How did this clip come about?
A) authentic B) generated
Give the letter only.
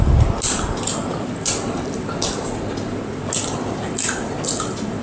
A